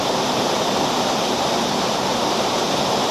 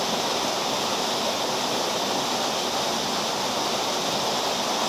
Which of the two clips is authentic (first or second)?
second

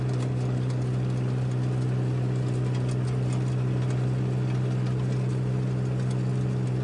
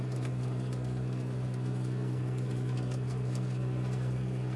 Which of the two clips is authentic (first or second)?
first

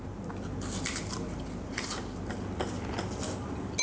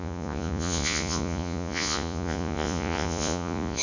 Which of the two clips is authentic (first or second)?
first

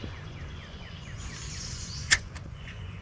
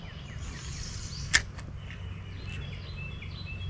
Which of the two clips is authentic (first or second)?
second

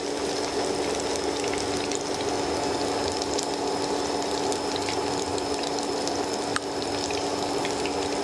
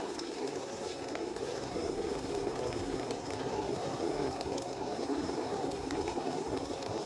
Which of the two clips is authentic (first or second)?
first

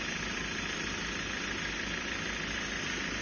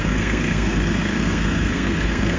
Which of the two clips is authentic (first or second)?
first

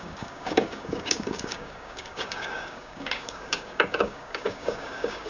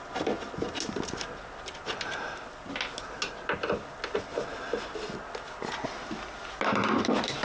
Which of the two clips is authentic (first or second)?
second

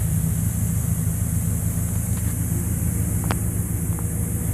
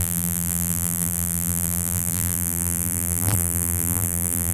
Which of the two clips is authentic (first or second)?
first